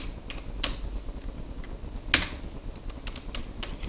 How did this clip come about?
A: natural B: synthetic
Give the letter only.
A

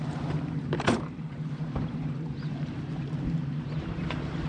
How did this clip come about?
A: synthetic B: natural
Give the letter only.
A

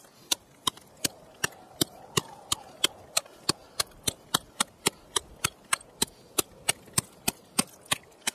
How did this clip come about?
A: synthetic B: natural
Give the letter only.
B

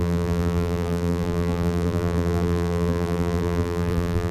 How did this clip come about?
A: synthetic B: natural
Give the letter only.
A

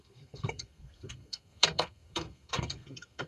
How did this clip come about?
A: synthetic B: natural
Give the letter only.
A